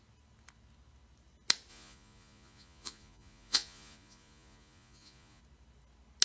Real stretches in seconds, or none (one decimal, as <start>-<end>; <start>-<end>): 0.0-1.7; 5.4-6.2

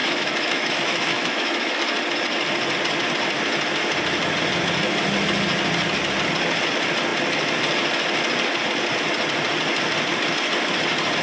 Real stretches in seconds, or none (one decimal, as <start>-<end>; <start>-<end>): 1.8-11.2

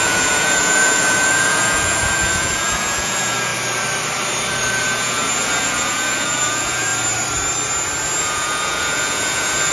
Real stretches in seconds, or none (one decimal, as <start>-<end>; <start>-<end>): 3.5-4.7; 6.9-8.2

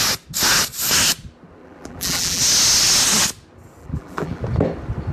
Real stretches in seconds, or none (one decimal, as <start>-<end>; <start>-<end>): 0.0-1.6; 2.4-3.8; 4.4-5.1